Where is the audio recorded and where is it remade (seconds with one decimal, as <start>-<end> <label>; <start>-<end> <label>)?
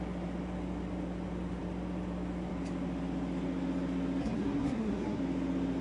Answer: 0.0-4.2 recorded; 4.2-5.2 remade; 5.2-5.8 recorded